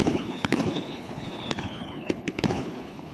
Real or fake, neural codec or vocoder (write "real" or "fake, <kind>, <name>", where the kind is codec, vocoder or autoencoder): fake, codec, HILCodec